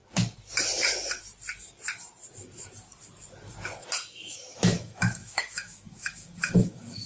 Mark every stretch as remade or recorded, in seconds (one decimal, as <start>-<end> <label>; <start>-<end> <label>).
0.0-4.1 recorded; 4.1-7.1 remade